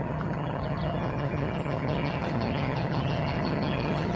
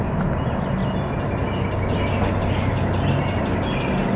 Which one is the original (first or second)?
second